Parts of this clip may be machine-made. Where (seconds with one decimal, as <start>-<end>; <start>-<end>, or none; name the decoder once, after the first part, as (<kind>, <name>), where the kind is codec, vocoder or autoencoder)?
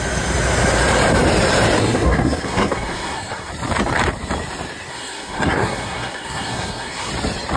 1.8-3.5 (codec, SNAC); 4.9-7.1